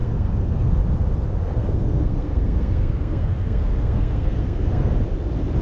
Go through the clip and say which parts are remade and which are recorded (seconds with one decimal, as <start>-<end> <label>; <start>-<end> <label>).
0.0-0.8 remade; 0.8-1.5 recorded; 1.5-4.9 remade; 4.9-5.6 recorded